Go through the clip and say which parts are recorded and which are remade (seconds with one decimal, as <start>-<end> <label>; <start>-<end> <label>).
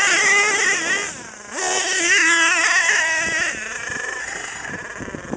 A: 0.0-4.2 recorded; 4.2-4.7 remade; 4.7-5.4 recorded